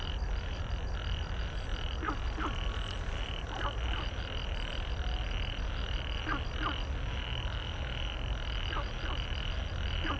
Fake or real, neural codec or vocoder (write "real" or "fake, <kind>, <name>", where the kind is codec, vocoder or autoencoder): real